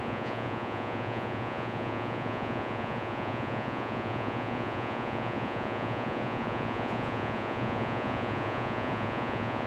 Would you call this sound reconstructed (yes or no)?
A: yes